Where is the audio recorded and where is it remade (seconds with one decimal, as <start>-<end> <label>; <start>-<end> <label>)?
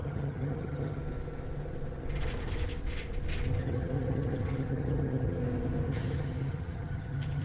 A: 0.0-1.0 remade; 1.0-3.6 recorded; 3.6-5.4 remade; 5.4-5.9 recorded; 5.9-7.4 remade